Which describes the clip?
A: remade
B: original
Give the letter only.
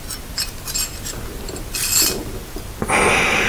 B